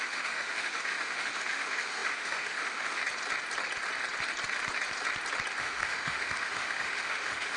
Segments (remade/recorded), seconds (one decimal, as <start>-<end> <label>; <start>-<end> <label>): 0.0-3.0 remade; 3.0-5.6 recorded; 5.6-7.6 remade